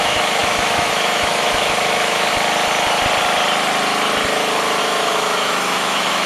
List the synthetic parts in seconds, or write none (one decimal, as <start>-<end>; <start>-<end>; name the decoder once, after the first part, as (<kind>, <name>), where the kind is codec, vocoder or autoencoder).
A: 0.0-2.3 (autoencoder, DAC-VAE); 4.8-6.3